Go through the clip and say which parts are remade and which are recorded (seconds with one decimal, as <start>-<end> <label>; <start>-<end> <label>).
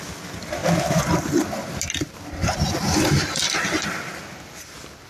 0.0-5.1 recorded